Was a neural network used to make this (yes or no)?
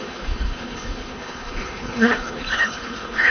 yes